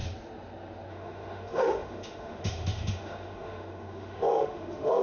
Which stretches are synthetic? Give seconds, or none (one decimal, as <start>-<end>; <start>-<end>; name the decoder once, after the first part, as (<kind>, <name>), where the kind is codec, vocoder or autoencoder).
0.9-5.0 (autoencoder, DAC-VAE)